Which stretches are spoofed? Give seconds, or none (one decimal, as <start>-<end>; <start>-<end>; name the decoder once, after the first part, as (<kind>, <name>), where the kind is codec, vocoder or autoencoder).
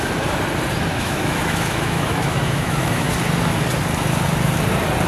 0.9-3.1 (autoencoder, DAC-VAE)